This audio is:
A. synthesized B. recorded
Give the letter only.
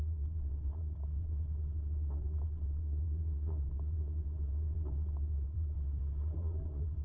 A